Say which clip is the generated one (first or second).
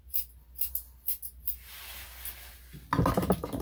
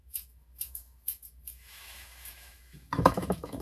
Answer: second